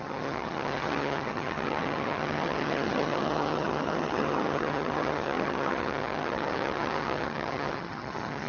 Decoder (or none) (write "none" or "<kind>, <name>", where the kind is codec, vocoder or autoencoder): vocoder, HiFi-GAN